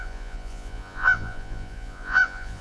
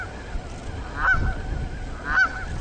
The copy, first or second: first